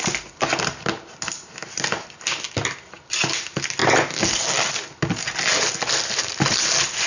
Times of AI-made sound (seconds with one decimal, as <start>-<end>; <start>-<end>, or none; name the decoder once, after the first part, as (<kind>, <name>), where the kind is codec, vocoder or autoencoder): none